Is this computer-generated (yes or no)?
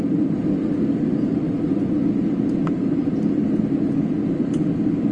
no